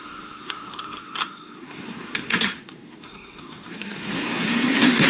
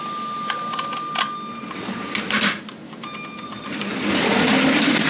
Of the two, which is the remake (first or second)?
first